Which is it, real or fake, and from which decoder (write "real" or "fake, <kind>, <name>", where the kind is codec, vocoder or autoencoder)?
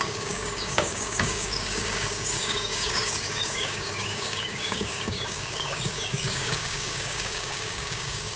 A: fake, codec, DAC